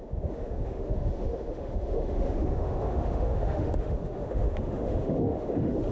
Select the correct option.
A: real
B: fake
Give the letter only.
B